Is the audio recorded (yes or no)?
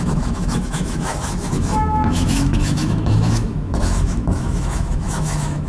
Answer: no